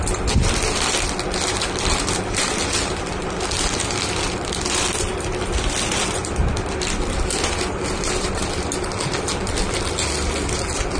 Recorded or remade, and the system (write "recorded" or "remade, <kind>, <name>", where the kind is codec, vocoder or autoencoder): recorded